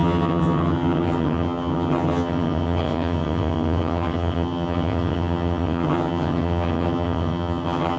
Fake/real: fake